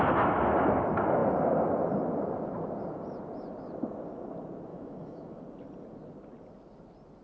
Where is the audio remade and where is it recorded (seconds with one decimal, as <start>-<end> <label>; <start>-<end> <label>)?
0.0-4.7 recorded; 4.7-5.4 remade; 5.4-7.2 recorded